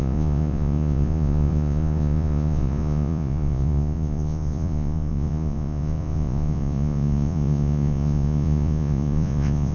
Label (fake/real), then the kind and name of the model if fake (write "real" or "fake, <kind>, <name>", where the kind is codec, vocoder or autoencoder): fake, vocoder, Vocos